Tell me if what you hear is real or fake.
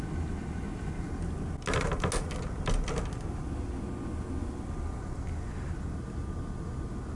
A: real